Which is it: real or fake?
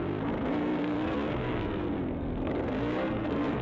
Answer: fake